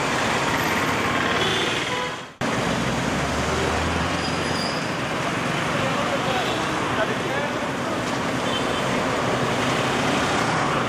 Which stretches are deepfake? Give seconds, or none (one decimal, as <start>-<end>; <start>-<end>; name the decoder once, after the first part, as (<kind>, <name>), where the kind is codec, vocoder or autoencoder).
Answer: 0.0-1.5 (vocoder, BigVGAN v2); 2.1-10.9

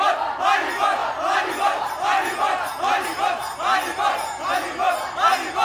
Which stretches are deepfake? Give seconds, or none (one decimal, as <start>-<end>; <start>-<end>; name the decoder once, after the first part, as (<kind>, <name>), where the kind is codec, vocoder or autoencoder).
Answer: none

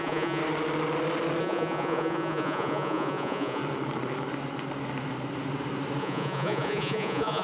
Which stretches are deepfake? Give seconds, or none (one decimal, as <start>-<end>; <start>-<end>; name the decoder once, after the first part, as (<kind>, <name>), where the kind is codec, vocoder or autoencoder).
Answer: 0.0-0.4 (vocoder, Vocos); 1.4-3.6; 6.0-7.4

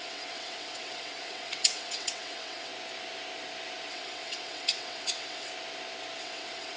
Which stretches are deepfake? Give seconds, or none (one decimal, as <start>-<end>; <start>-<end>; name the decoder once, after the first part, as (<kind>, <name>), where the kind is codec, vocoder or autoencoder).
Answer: 0.0-2.7 (vocoder, WaveNeXt); 3.9-5.5; 6.2-6.8

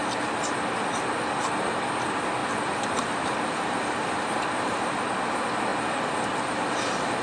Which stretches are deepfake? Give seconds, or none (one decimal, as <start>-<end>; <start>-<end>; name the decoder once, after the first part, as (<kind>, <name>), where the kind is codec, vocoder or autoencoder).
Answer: 2.4-5.0 (vocoder, BigVGAN v2)

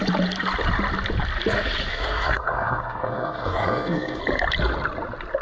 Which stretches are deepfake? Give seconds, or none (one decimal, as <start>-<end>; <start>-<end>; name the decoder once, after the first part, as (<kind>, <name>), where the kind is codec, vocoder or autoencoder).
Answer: 1.9-4.2 (codec, SNAC)

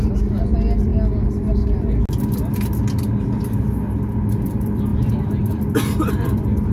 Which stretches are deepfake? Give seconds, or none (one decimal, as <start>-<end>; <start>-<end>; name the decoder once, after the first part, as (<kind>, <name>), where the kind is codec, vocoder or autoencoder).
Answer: 0.0-0.9 (vocoder, BigVGAN v2); 4.3-6.7